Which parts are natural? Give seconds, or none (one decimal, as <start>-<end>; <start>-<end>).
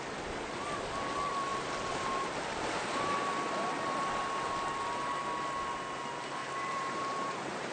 0.0-1.5; 3.7-6.4